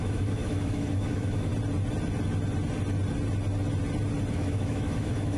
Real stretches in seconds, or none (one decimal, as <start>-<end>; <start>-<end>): 1.5-4.3